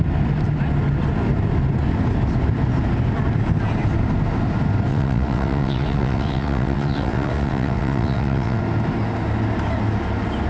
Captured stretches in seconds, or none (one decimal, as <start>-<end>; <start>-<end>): 0.0-4.9; 8.6-10.5